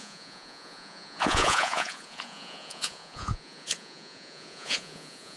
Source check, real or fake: fake